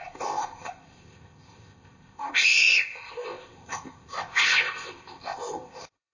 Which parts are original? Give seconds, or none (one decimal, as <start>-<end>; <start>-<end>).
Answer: none